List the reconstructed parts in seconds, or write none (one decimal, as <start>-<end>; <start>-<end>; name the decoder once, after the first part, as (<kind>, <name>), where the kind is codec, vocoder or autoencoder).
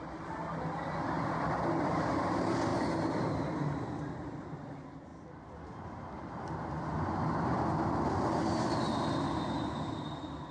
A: none